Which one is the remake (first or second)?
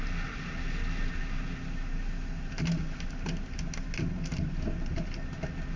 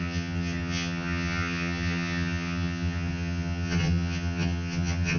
second